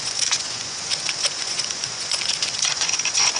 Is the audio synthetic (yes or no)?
yes